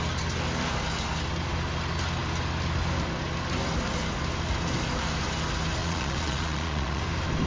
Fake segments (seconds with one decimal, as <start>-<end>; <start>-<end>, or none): 5.8-7.0